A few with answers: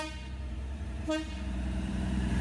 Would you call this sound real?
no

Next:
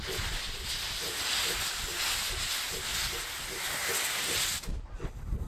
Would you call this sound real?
yes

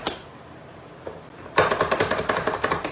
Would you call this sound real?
yes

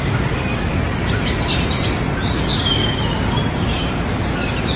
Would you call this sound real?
no